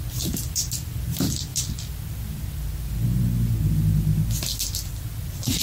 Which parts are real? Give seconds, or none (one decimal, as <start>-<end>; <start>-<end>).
0.0-5.6